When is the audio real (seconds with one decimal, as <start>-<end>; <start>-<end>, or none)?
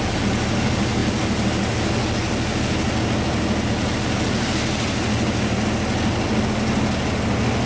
0.0-7.7